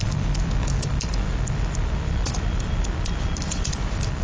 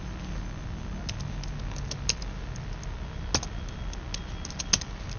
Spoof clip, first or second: first